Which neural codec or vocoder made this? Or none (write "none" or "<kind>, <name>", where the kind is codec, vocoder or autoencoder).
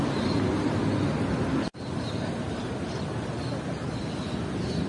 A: none